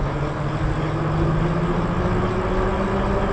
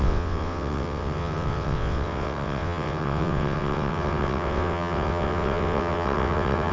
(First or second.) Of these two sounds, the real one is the first